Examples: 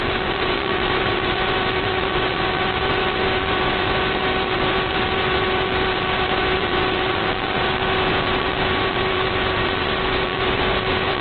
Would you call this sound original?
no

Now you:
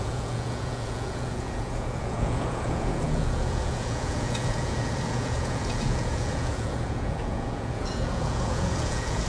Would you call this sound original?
no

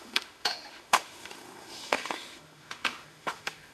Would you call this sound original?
no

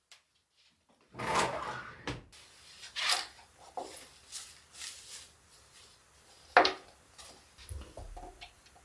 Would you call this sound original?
yes